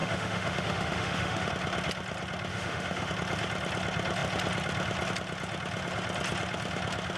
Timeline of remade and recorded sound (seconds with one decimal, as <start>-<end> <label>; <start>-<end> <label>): 0.0-1.5 remade; 1.5-2.5 recorded; 2.5-3.1 remade; 3.1-7.2 recorded